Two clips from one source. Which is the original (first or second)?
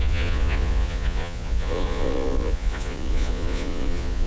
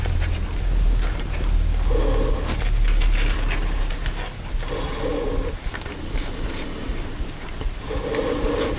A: second